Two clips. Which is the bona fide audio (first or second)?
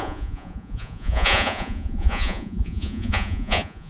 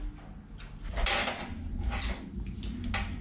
second